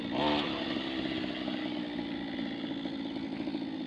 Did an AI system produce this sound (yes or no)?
no